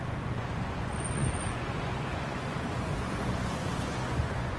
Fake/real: fake